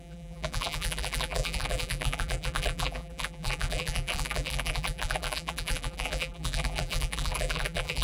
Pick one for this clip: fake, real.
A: fake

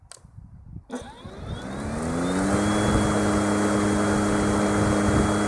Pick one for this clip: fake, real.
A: real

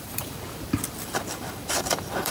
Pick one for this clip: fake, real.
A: fake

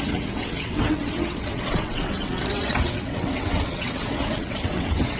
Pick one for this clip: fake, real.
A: fake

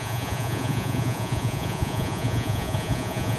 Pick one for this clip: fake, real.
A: fake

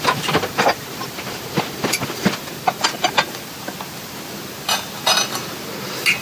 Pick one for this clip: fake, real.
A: real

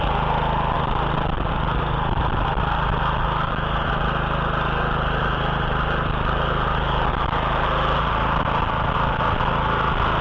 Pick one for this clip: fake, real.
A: real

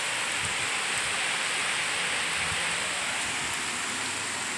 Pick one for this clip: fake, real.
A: real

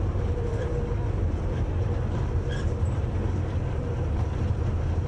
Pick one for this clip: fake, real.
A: fake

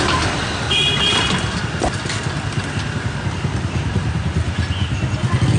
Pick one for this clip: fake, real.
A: real